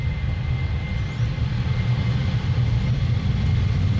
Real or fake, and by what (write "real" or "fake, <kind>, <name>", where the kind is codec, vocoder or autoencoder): real